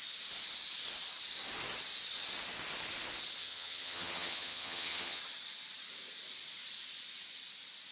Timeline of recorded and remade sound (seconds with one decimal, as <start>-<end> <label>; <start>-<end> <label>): 0.0-3.4 recorded; 3.4-5.2 remade; 5.2-7.9 recorded